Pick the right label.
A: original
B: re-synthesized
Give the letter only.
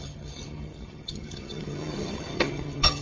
B